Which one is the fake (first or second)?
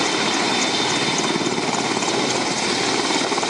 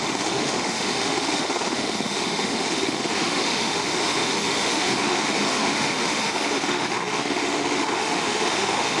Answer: second